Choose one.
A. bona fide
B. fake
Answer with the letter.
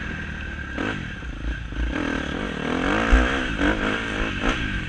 A